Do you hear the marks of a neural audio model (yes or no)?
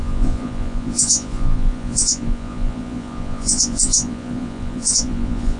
yes